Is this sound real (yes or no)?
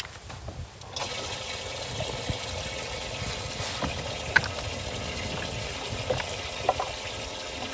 yes